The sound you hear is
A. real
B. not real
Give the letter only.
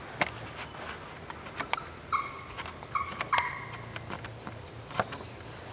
A